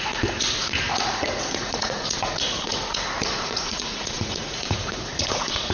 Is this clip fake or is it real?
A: fake